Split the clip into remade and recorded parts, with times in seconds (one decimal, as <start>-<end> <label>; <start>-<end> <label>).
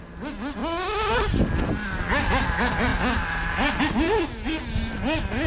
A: 0.0-5.5 recorded